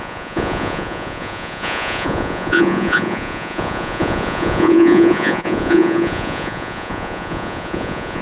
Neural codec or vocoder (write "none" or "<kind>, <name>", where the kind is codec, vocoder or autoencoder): vocoder, Vocos